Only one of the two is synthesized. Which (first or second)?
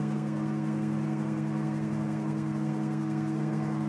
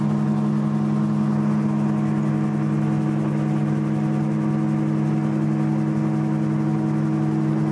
first